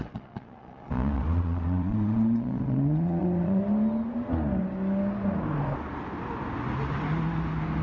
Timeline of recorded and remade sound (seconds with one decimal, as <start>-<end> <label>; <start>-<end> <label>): 0.0-3.6 remade; 3.6-7.8 recorded